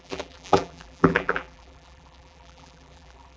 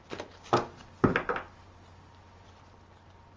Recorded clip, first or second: second